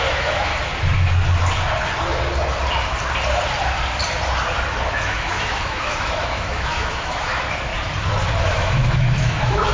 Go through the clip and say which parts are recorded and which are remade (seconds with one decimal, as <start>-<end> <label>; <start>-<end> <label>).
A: 0.0-0.5 remade; 0.5-4.9 recorded; 4.9-7.7 remade; 7.7-8.4 recorded; 8.4-9.7 remade